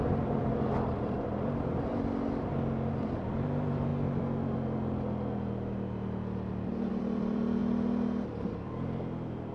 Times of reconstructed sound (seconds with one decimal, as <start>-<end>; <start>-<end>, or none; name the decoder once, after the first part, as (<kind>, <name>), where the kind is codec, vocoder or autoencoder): 0.0-1.7 (vocoder, BigVGAN v2); 2.9-3.9; 6.9-7.6; 8.5-9.5